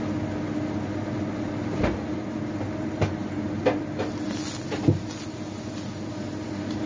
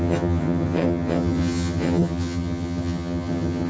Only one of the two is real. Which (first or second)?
first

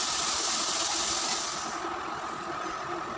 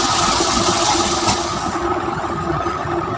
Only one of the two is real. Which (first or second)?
first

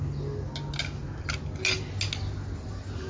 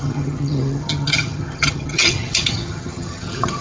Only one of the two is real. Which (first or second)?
first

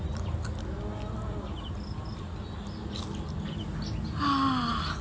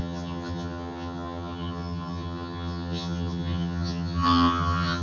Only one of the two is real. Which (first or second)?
first